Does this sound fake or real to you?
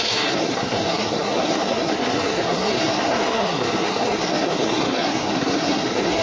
fake